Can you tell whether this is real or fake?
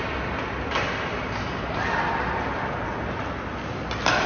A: real